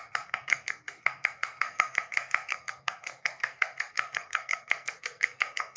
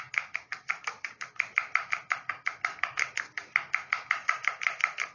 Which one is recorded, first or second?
second